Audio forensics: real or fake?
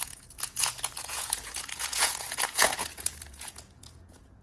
fake